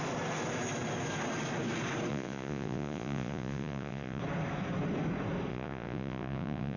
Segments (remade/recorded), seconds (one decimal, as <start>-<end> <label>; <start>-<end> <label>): 0.0-2.1 recorded; 2.1-4.2 remade; 4.2-5.5 recorded; 5.5-6.8 remade